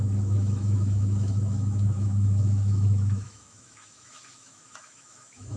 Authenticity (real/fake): fake